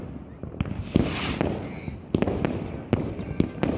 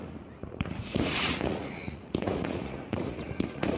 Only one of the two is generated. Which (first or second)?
second